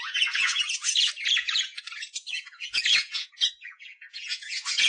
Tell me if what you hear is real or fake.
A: fake